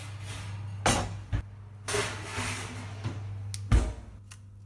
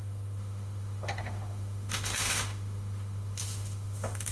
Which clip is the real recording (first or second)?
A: first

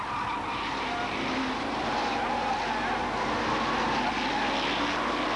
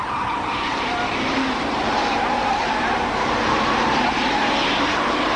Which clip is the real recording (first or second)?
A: first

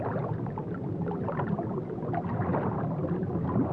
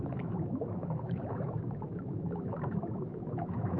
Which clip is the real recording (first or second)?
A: first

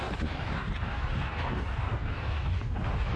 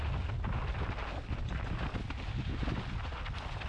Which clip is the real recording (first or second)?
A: second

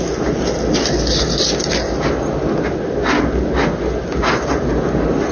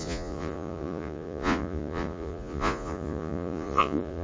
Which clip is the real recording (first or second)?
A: first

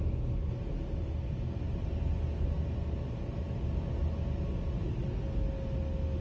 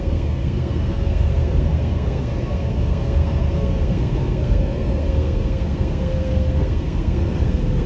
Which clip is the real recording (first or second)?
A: first